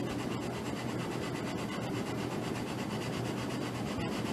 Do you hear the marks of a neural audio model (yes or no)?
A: no